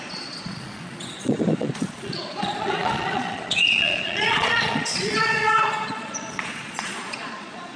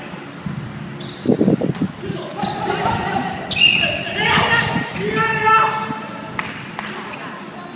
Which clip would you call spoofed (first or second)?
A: first